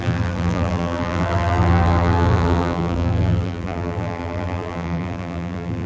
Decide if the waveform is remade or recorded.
remade